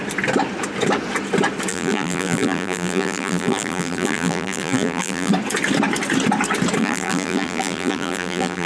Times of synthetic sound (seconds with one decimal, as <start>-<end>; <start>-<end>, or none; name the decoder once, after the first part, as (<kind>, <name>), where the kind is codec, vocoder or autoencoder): 1.7-5.3 (vocoder, BigVGAN v2); 6.8-8.7